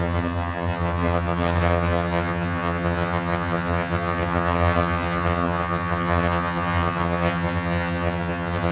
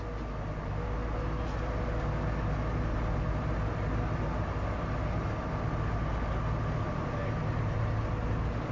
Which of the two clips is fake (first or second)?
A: first